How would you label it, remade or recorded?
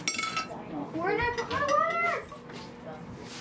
recorded